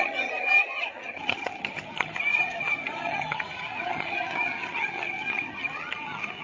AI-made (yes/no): yes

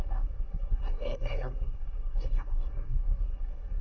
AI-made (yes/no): yes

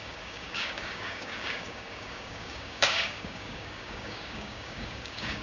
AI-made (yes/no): yes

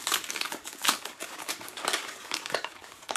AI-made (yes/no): yes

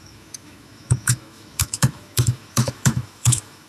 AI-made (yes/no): yes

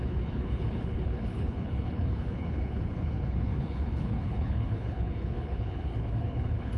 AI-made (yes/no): yes